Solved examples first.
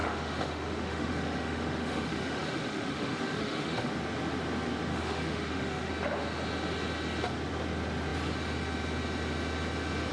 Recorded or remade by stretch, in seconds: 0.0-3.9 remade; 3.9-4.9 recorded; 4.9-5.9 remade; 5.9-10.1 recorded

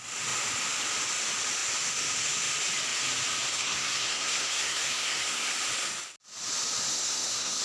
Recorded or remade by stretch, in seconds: 0.0-3.5 recorded; 3.5-5.5 remade; 5.5-6.9 recorded; 6.9-7.6 remade

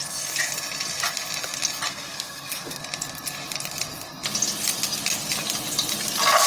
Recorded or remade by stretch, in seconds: 0.0-1.9 recorded; 1.9-2.8 remade; 2.8-6.5 recorded

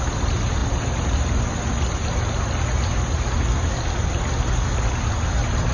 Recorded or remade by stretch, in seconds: 0.0-5.7 recorded